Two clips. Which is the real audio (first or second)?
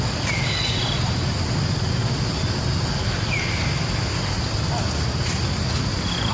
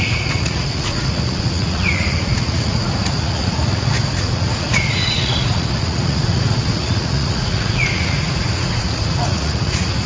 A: first